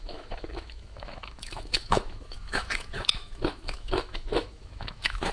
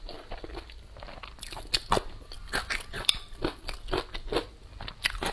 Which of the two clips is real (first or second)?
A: second